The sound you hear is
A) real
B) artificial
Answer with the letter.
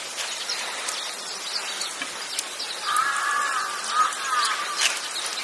A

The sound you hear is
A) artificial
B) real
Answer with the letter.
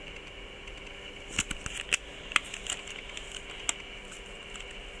B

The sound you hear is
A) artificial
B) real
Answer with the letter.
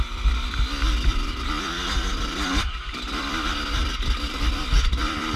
A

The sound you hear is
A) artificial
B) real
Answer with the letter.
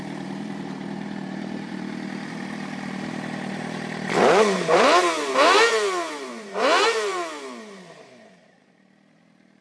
A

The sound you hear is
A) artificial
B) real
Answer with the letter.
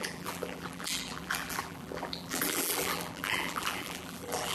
A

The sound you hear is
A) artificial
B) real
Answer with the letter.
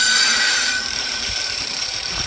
A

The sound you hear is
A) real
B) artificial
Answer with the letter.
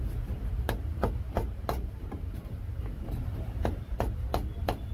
B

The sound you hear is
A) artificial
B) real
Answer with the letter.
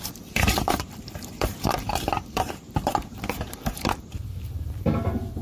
A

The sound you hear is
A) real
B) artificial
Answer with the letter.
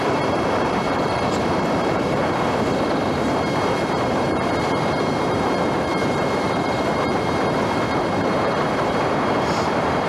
B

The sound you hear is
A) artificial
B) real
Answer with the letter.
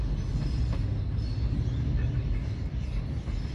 B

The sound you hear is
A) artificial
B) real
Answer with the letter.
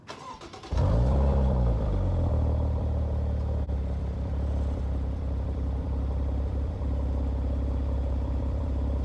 A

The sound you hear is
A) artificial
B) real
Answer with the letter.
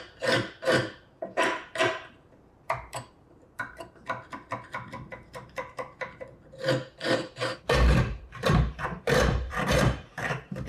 A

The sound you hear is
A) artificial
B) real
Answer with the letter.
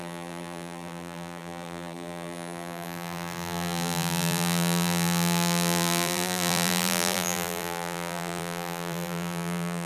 A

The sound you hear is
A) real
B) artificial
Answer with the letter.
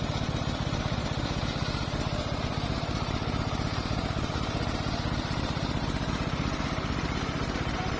B